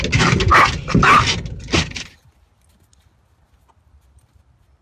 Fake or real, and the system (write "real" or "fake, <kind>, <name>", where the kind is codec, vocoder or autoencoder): real